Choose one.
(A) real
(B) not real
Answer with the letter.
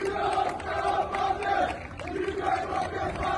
B